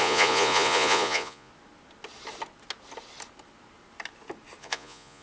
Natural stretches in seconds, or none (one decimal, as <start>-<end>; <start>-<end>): 1.5-4.6